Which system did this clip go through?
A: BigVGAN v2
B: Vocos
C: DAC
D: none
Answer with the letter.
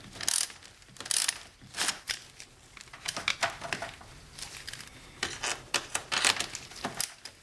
D